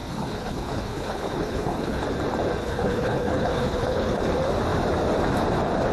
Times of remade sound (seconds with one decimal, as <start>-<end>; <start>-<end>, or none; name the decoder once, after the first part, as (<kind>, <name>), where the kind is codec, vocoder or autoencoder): 0.0-2.0 (codec, HILCodec); 2.6-4.2